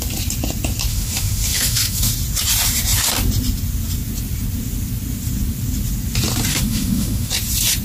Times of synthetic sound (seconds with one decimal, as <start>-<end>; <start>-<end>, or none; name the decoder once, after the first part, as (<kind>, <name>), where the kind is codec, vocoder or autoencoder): 0.9-2.1 (autoencoder, DAC-VAE); 6.5-7.3